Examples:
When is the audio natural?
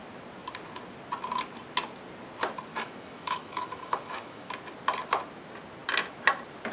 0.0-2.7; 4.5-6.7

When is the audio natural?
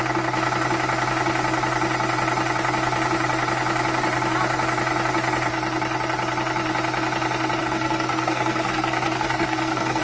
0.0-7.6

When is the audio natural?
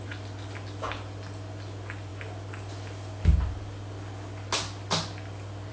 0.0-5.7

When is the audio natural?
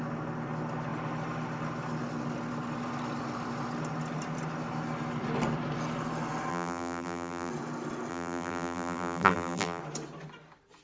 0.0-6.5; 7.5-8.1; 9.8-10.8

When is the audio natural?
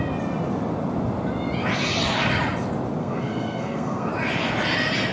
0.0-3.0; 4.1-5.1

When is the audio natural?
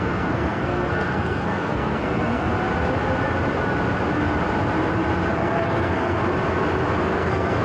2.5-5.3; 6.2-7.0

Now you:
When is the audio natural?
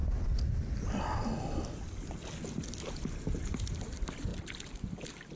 0.0-5.4